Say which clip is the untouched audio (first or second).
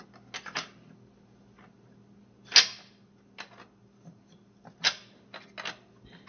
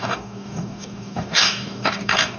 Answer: first